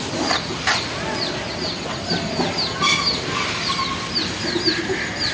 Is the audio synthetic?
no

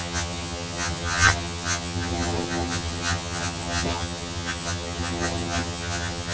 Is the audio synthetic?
yes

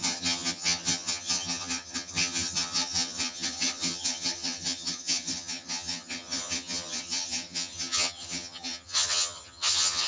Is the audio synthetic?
yes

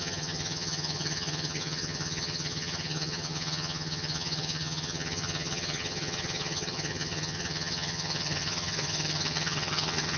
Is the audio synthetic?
yes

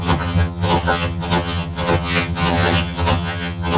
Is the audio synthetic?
yes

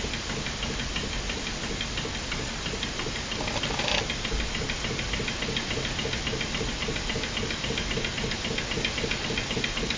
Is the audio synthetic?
no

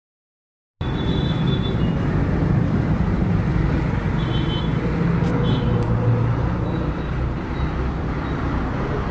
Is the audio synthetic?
no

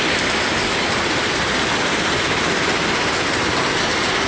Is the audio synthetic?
no